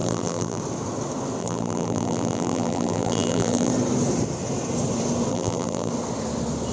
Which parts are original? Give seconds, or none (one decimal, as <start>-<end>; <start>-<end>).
0.6-1.4; 3.7-5.3; 5.9-6.7